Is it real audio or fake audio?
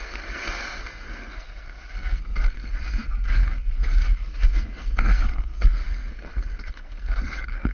fake